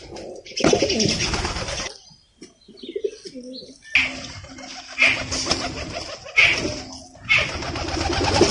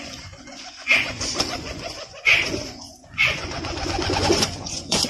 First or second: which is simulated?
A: second